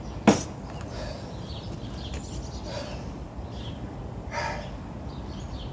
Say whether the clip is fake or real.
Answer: real